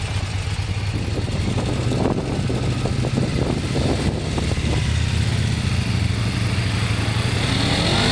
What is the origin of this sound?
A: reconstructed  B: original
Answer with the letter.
B